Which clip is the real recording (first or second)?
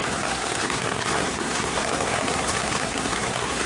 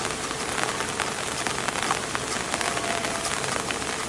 second